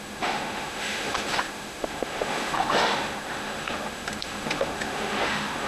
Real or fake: fake